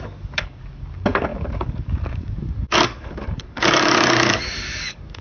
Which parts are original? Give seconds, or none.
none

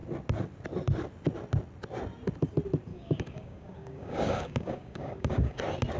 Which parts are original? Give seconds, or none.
0.0-2.9; 5.6-6.0

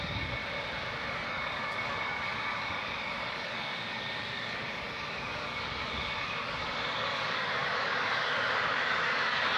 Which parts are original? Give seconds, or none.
0.4-1.1

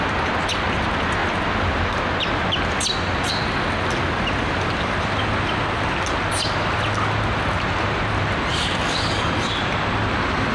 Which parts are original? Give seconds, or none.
0.0-8.5; 9.3-10.5

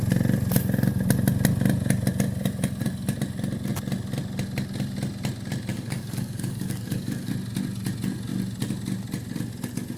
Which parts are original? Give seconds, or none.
0.0-5.7; 7.3-10.0